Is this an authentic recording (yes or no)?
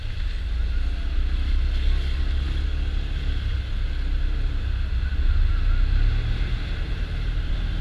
yes